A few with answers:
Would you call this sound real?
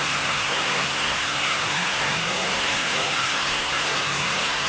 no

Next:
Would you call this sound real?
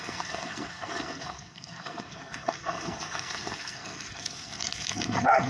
no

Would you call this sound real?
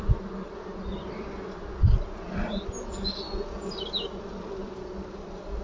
yes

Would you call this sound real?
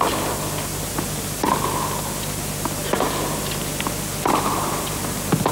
yes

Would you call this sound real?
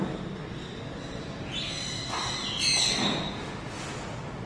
yes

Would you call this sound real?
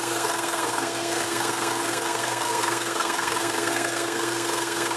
no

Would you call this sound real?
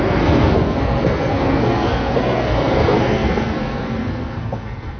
no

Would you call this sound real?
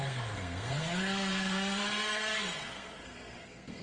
no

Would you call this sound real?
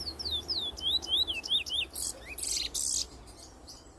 yes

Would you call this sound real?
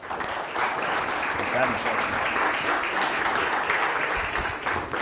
yes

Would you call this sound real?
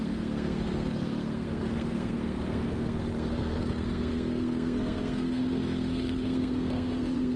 no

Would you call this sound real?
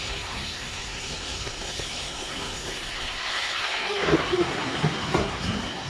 no